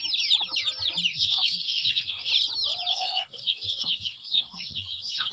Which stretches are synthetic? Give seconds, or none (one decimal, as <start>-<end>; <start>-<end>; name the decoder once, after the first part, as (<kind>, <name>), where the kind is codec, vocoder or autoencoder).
1.1-2.3 (codec, SNAC); 2.9-5.3